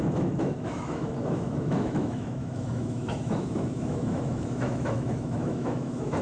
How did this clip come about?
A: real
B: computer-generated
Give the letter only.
B